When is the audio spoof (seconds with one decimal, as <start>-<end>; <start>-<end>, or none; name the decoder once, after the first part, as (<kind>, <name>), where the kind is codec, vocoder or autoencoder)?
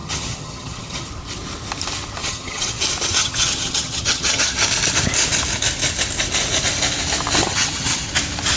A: 0.0-1.1 (vocoder, HiFi-GAN); 2.2-2.8; 3.2-4.6; 7.4-8.1